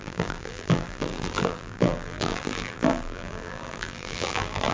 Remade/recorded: remade